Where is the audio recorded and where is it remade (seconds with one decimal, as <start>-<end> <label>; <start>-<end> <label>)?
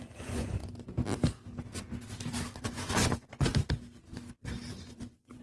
0.0-0.6 remade; 0.6-2.6 recorded; 2.6-3.5 remade; 3.5-4.9 recorded; 4.9-5.4 remade